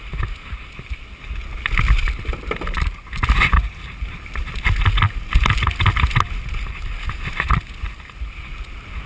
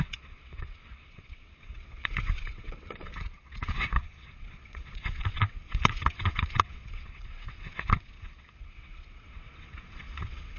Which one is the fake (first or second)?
second